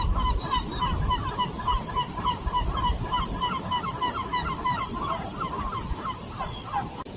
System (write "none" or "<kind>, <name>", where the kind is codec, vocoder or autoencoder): vocoder, BigVGAN v2